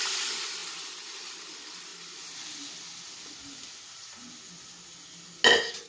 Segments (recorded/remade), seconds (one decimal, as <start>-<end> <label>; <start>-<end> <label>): 0.0-5.9 recorded